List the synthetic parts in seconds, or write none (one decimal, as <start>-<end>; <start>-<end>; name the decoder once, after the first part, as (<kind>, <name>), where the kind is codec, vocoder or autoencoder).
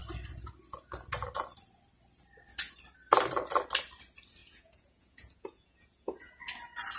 4.4-6.4 (vocoder, Vocos)